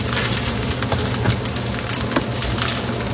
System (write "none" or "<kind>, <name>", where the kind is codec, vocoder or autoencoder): none